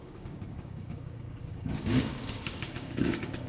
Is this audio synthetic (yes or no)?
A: yes